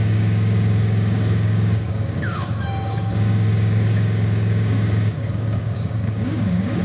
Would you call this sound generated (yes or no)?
yes